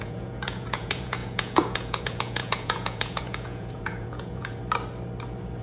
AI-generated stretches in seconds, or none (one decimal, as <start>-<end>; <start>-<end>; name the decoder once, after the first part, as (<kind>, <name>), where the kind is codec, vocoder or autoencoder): 0.0-4.6 (vocoder, Vocos)